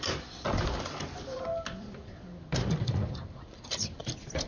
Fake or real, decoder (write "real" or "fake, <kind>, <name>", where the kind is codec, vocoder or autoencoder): fake, vocoder, BigVGAN v2